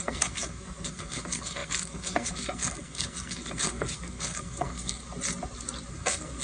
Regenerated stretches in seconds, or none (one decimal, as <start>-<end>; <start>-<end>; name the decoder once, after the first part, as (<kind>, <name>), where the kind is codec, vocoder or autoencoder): 0.0-5.0 (codec, SNAC); 5.9-6.4